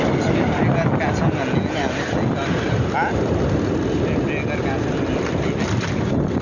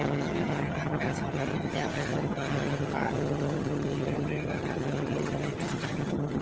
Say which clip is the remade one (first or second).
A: second